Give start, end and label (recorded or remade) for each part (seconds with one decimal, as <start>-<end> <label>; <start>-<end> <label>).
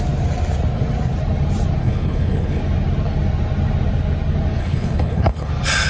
0.0-1.8 recorded; 1.8-2.6 remade; 2.6-4.6 recorded; 4.6-5.5 remade; 5.5-5.9 recorded